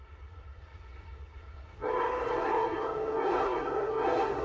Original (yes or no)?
no